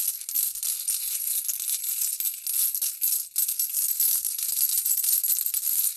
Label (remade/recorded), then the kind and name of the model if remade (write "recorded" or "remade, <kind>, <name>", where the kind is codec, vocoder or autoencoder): recorded